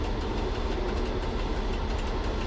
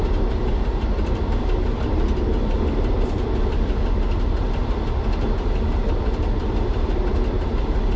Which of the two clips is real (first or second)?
first